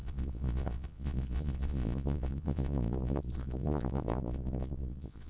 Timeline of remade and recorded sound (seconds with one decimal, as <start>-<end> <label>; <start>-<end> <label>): 0.0-5.3 remade